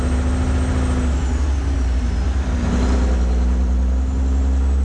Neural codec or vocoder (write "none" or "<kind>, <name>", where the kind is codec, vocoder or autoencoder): none